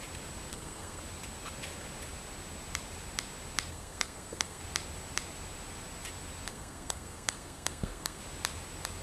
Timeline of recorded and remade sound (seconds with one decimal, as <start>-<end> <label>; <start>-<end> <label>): 0.0-0.5 recorded; 0.5-1.0 remade; 1.0-3.7 recorded; 3.7-4.6 remade; 4.6-6.5 recorded; 6.5-8.2 remade; 8.2-9.0 recorded